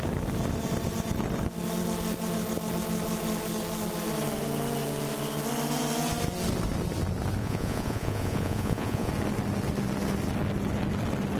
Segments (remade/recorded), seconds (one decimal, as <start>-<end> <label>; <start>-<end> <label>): 0.0-7.4 recorded; 7.4-9.1 remade; 9.1-11.4 recorded